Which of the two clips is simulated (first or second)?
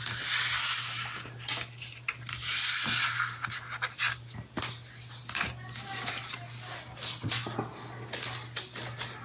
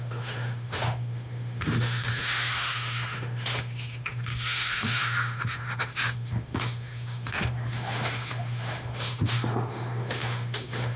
second